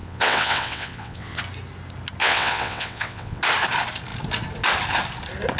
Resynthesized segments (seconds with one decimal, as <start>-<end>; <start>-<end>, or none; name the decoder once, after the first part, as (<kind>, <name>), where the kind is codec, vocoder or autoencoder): 0.0-1.4 (vocoder, WaveNeXt); 2.2-3.4